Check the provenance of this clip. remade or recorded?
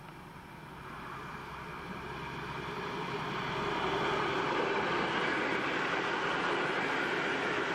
recorded